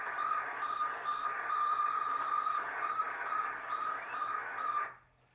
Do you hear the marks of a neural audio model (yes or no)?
no